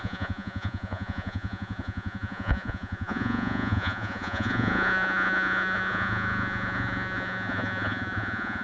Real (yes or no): no